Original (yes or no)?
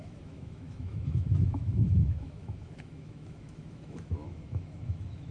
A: no